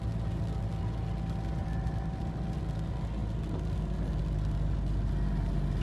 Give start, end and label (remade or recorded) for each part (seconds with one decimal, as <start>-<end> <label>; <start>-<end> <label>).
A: 0.0-1.6 recorded; 1.6-2.6 remade; 2.6-5.8 recorded